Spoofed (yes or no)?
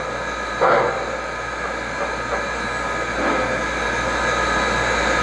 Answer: no